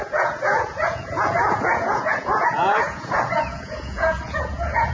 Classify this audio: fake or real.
fake